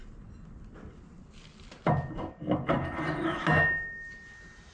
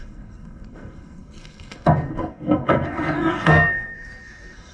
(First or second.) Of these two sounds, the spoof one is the second